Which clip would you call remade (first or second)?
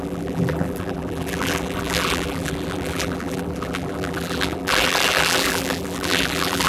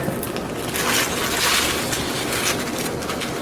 first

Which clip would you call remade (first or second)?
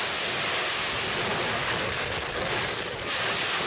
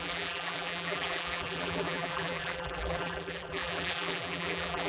second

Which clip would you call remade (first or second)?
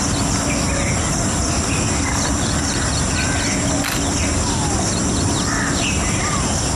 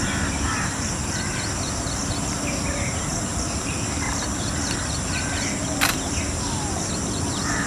second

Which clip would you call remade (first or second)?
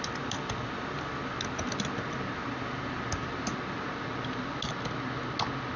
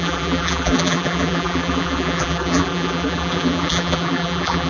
second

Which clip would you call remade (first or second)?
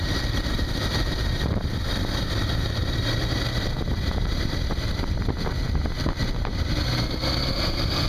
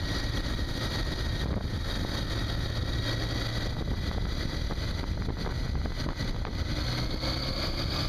first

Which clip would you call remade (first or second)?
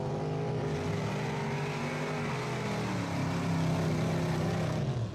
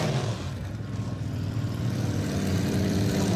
second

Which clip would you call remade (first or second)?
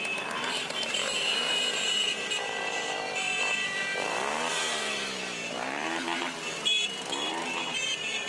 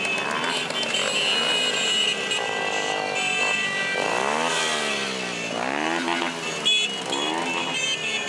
first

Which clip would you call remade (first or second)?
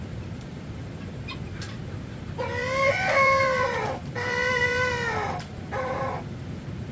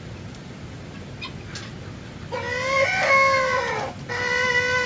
first